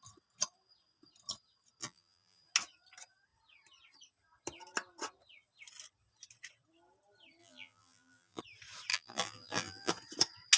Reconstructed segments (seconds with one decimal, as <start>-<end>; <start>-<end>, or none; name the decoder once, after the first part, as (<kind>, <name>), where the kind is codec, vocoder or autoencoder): 1.8-2.4 (vocoder, BigVGAN v2); 7.4-8.4; 8.9-9.9